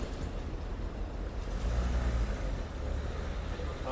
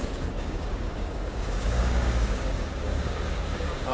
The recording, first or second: first